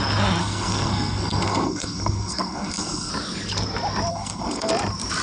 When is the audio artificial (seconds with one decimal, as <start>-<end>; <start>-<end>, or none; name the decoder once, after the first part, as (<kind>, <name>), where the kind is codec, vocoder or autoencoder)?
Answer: 0.4-3.1 (codec, SNAC); 4.1-4.7